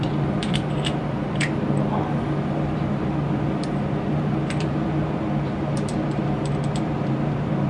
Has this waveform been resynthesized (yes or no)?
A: yes